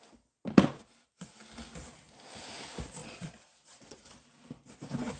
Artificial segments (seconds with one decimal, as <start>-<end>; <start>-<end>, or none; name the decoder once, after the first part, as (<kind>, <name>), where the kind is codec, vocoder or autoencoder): 3.0-4.0 (vocoder, Vocos)